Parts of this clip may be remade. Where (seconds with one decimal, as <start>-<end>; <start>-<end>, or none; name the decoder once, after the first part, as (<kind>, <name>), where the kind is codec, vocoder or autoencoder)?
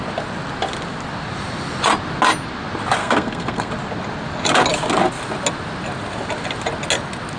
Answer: 3.0-3.7 (codec, SNAC)